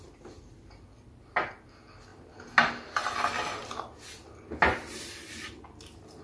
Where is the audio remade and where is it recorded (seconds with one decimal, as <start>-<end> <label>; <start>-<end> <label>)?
0.0-6.2 recorded